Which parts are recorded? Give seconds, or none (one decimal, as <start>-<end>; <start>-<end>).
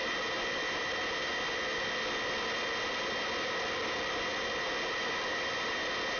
0.0-6.2